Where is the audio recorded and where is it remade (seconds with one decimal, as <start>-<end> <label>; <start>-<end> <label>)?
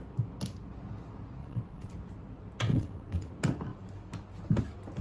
0.0-1.4 recorded; 1.4-1.9 remade; 1.9-2.7 recorded; 2.7-3.3 remade; 3.3-5.0 recorded